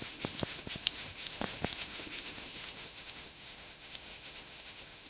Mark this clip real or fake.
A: fake